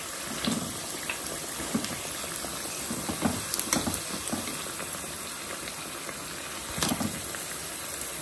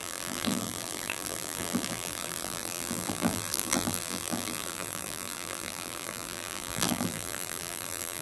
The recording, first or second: first